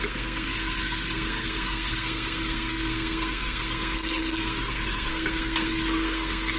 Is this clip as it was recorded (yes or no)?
no